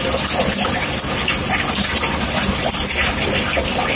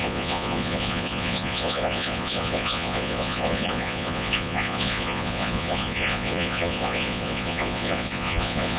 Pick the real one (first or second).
first